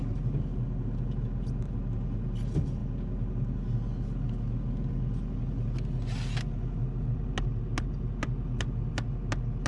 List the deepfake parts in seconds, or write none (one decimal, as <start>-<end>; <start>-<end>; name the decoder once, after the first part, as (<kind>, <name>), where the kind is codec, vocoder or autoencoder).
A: none